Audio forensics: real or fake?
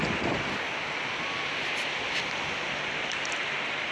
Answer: real